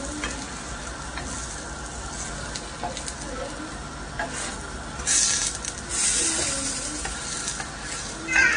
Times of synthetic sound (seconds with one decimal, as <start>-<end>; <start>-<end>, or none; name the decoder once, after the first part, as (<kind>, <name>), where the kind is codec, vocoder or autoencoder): none